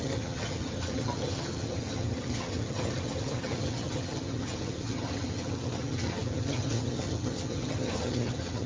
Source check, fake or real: fake